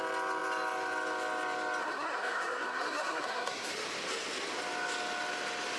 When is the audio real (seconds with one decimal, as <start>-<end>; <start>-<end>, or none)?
0.0-1.8; 3.7-5.8